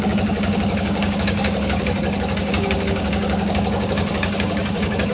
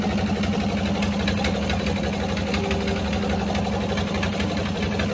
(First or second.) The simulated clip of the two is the first